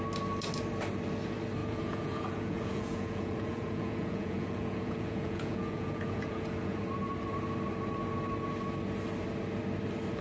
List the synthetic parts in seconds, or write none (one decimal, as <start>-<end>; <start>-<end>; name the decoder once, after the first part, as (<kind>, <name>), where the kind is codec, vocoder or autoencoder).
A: 1.6-6.8 (vocoder, Vocos)